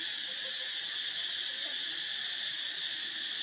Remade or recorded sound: recorded